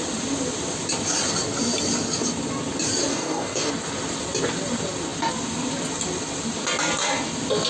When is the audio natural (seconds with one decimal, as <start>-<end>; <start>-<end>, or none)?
0.0-3.1; 3.7-7.7

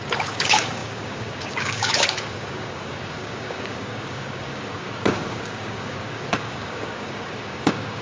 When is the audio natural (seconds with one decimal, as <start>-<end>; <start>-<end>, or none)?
none

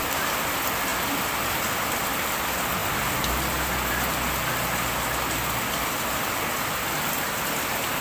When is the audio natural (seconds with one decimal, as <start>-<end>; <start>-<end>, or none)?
0.0-8.0

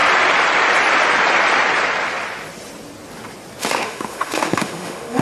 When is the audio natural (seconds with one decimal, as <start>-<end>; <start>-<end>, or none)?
0.0-3.6

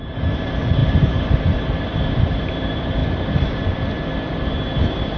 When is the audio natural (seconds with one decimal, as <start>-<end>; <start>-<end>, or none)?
0.0-5.2

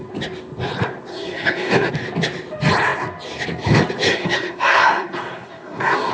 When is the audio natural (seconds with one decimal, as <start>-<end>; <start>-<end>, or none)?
0.0-1.1; 1.9-4.1

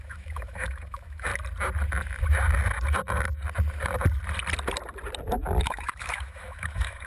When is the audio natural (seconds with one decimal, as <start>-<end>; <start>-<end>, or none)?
1.3-5.6

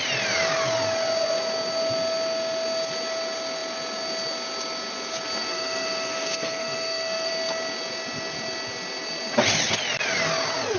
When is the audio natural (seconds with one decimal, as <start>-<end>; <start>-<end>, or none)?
0.0-5.5; 7.3-10.8